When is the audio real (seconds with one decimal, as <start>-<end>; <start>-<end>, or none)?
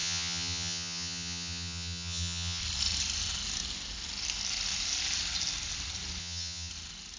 2.6-6.2; 6.7-7.2